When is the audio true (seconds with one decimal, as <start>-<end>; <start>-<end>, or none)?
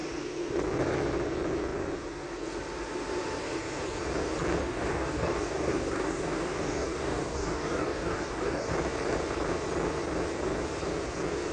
0.0-4.6; 8.7-11.5